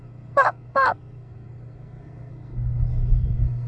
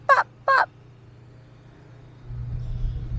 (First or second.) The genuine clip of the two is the second